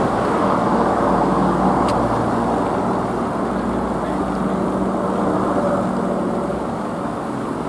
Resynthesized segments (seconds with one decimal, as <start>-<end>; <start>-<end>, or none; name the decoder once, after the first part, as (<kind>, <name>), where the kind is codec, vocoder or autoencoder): 0.0-1.9 (codec, DAC); 6.5-7.7